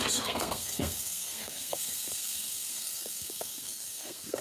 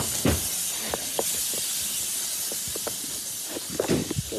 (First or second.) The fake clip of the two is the first